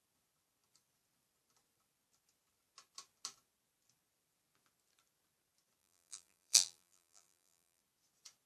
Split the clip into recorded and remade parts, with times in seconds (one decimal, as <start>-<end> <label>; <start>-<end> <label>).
0.0-5.8 recorded; 5.8-7.8 remade; 7.8-8.5 recorded